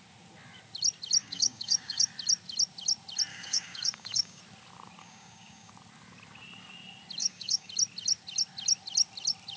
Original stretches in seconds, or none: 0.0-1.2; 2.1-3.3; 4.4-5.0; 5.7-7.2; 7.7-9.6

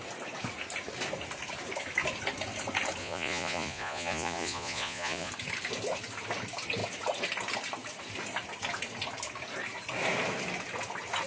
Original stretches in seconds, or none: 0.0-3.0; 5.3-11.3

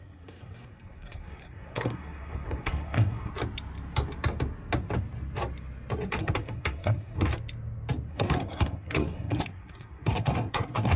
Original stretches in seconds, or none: 3.3-6.1; 7.3-8.1

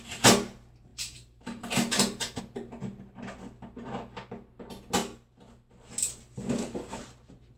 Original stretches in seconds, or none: 0.0-0.9; 2.4-7.6